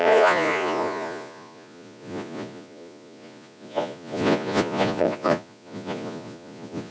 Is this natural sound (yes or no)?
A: no